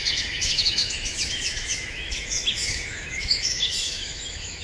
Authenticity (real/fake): fake